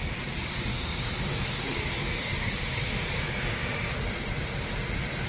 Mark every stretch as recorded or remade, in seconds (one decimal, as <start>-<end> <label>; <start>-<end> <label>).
0.0-0.7 recorded; 0.7-3.9 remade; 3.9-5.3 recorded